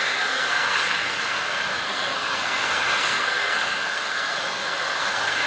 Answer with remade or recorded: remade